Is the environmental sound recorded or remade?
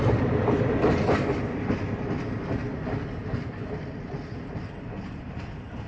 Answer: recorded